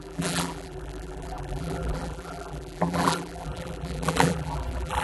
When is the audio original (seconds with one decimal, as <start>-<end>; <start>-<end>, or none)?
none

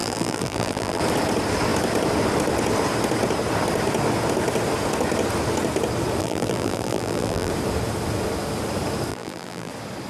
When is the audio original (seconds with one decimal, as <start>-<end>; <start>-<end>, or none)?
1.0-6.2; 7.5-9.1; 9.7-10.1